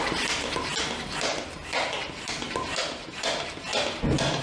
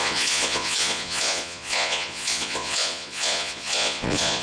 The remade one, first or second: second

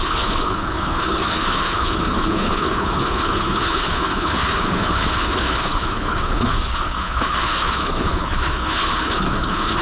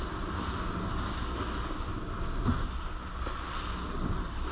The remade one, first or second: first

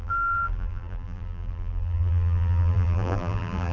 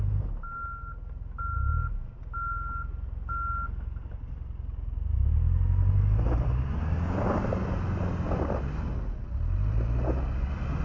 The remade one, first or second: first